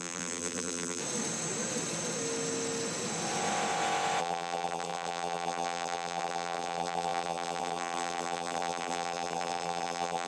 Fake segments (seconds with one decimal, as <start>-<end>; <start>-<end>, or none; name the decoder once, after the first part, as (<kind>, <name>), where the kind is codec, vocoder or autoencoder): 0.0-1.0 (vocoder, BigVGAN v2); 4.2-10.3

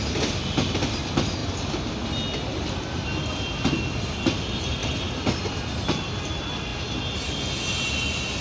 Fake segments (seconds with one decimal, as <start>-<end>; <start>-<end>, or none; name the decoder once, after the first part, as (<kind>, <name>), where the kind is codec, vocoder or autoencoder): none

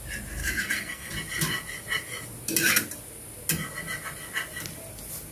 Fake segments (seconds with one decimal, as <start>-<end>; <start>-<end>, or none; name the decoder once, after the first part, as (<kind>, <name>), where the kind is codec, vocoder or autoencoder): 0.4-1.1 (codec, SNAC)

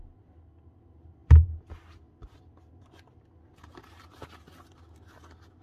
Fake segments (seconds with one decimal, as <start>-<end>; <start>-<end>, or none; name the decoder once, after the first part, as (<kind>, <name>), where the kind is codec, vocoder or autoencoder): none

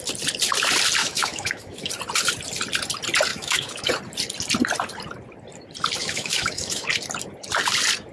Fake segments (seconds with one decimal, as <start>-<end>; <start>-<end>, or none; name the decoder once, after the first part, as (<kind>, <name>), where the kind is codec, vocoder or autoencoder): 1.0-1.9 (autoencoder, DAC-VAE); 3.3-3.9; 6.0-6.9